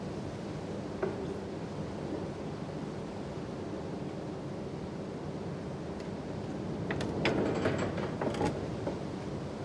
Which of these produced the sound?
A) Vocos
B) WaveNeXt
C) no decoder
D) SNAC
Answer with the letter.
C